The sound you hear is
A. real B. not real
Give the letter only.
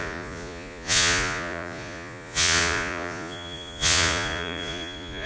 B